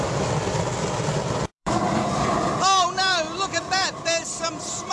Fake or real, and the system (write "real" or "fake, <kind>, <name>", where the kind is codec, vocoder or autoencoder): fake, vocoder, BigVGAN v2